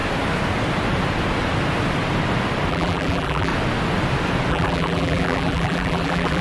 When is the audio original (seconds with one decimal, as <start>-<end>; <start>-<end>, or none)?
0.0-2.7; 3.5-4.5